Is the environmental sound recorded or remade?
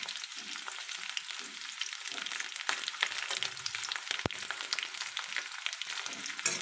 recorded